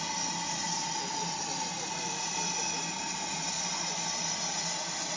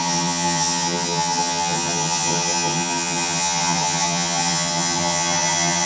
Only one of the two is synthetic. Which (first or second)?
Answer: second